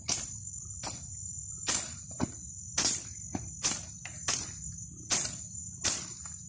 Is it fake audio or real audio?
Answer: real